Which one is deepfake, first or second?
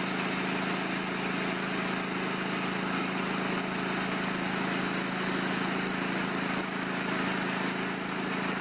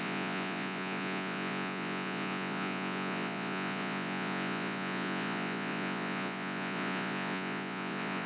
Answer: second